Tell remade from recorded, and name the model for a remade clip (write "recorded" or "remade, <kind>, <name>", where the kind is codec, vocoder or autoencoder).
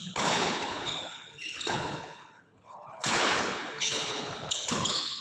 remade, codec, HILCodec